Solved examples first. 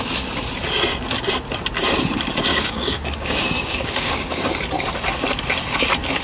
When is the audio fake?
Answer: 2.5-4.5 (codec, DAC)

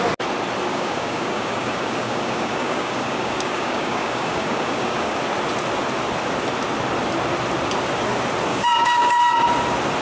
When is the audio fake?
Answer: 0.7-5.2 (codec, DAC); 8.5-9.2